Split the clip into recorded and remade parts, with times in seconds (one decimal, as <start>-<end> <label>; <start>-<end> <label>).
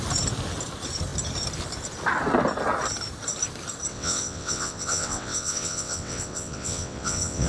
0.0-3.9 recorded; 3.9-7.5 remade